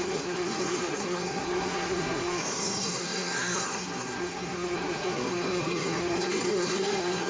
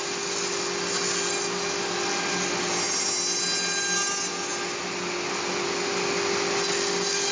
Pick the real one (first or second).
second